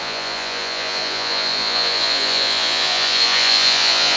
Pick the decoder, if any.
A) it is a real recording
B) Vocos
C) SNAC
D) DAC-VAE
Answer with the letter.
B